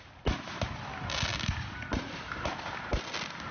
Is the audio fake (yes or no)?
no